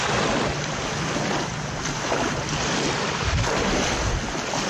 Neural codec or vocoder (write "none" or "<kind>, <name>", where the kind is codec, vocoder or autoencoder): none